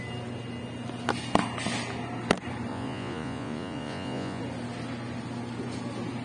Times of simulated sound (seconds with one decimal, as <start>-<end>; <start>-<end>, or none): 2.7-4.4

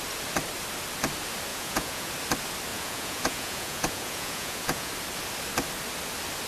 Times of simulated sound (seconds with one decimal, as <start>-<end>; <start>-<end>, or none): 1.5-2.1; 2.7-4.9